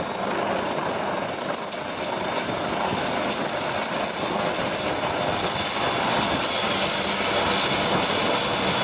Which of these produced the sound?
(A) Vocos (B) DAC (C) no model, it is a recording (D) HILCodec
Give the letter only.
C